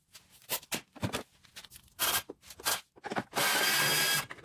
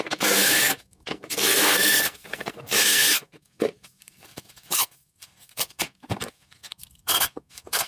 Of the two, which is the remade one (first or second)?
second